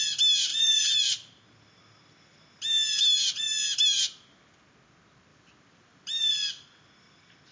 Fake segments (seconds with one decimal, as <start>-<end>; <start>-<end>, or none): 0.5-1.4; 5.3-6.3